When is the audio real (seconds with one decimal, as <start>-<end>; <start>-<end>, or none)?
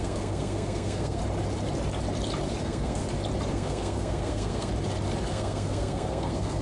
1.2-2.6; 3.0-3.5; 4.7-5.3